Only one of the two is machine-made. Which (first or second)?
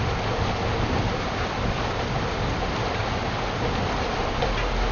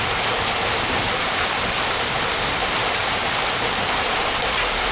second